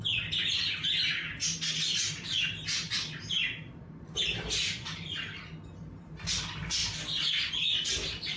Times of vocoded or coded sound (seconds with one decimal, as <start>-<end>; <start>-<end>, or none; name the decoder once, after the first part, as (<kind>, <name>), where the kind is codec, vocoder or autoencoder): none